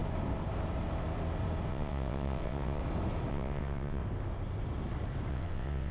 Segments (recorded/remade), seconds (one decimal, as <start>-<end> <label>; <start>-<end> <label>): 0.0-1.7 recorded; 1.7-2.8 remade; 2.8-3.3 recorded; 3.3-4.0 remade; 4.0-5.3 recorded; 5.3-5.9 remade